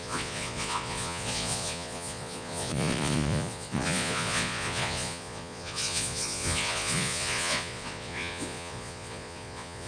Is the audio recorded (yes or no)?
no